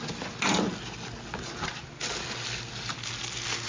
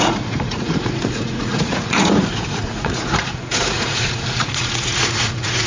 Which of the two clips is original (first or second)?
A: first